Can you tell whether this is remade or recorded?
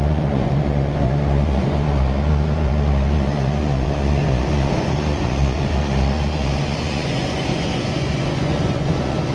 remade